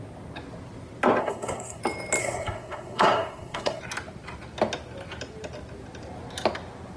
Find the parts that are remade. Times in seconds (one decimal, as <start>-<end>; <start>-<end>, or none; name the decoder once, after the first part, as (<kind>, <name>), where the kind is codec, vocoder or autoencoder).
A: 1.2-1.8 (codec, SNAC); 2.2-3.8